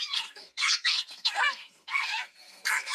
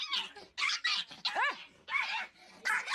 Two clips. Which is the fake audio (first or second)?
first